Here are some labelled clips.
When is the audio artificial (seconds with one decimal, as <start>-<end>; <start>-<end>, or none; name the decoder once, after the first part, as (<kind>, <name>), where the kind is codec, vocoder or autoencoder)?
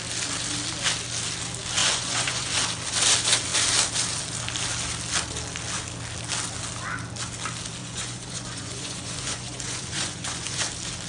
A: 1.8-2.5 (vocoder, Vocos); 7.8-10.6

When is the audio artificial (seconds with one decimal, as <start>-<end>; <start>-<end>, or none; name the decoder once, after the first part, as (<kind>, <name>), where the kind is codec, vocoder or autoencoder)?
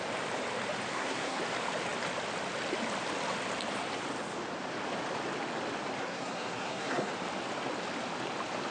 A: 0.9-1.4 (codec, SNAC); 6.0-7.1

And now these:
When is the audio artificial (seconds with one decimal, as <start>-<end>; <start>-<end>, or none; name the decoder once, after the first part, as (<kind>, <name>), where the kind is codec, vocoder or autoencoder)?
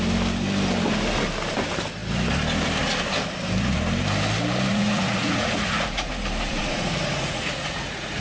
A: 4.7-6.1 (vocoder, Vocos); 6.5-8.2